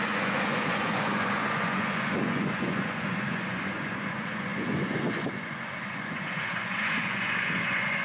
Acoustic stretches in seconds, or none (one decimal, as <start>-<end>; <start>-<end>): none